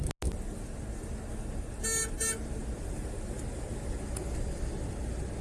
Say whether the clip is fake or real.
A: real